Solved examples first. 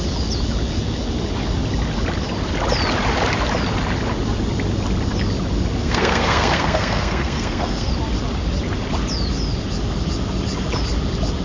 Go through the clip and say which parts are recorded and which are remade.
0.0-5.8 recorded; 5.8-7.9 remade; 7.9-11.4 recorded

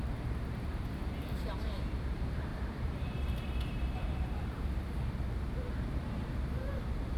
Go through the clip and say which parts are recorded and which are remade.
0.0-7.2 remade

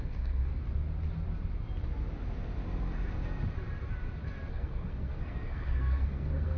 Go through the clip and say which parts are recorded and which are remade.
0.0-0.5 remade; 0.5-4.5 recorded; 4.5-6.6 remade

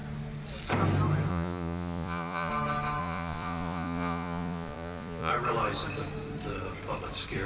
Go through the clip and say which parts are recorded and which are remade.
0.0-1.3 recorded; 1.3-2.5 remade; 2.5-3.0 recorded; 3.0-5.3 remade; 5.3-7.5 recorded

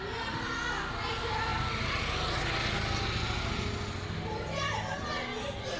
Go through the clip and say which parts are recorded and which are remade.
0.0-5.8 recorded

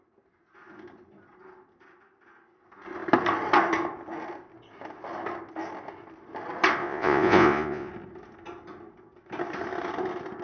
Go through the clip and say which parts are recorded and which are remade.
0.0-6.8 recorded; 6.8-7.9 remade; 7.9-10.4 recorded